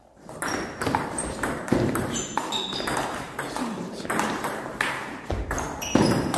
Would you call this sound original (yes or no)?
no